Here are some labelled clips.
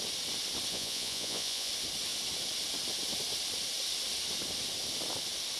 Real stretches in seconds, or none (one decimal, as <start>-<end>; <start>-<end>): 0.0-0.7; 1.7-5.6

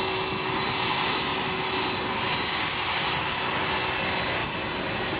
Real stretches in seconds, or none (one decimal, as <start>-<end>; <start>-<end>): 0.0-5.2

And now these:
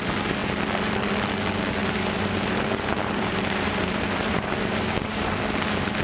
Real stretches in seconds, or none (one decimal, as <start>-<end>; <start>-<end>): 0.0-1.8; 5.4-6.0

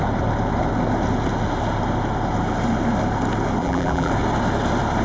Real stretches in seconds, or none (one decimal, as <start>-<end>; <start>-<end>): 0.0-3.6; 4.1-5.0

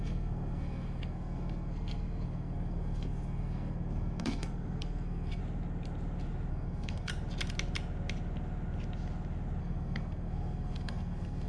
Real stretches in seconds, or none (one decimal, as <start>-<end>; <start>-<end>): 5.4-6.5; 7.1-9.6